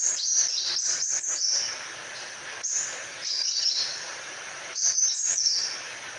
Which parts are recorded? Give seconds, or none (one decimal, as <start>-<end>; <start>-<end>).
0.0-3.9; 4.8-6.2